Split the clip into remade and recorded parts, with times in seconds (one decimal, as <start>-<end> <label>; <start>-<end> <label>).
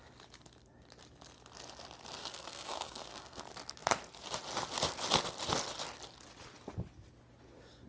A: 0.0-2.2 recorded; 2.2-3.4 remade; 3.4-7.9 recorded